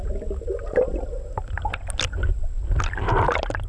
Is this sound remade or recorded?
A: recorded